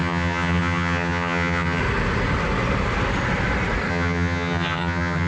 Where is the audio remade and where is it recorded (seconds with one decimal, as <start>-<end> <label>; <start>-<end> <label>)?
0.0-1.8 remade; 1.8-3.9 recorded; 3.9-5.3 remade